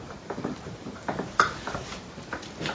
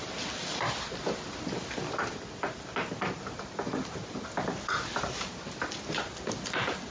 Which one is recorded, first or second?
second